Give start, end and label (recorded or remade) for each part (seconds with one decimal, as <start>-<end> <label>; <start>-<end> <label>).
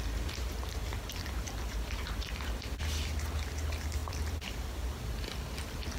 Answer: 0.0-0.8 recorded; 0.8-2.3 remade; 2.3-4.0 recorded; 4.0-6.0 remade